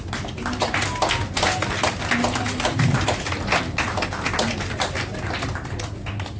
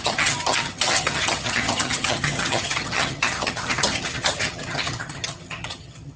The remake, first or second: second